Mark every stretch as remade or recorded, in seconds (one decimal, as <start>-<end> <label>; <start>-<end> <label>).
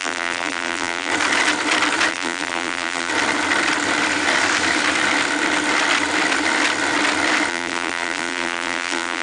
0.0-1.1 remade; 1.1-2.1 recorded; 2.1-3.1 remade; 3.1-7.5 recorded; 7.5-9.2 remade